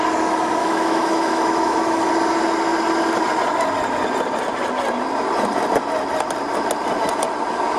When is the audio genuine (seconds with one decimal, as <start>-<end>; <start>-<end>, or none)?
0.0-0.6; 2.1-7.8